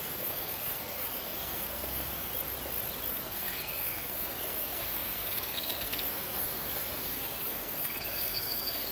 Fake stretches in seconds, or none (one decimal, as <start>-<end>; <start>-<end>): 0.0-2.3; 3.1-8.9